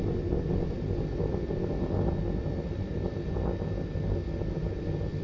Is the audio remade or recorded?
recorded